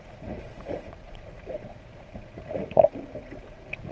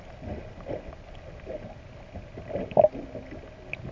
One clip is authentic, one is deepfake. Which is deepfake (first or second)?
first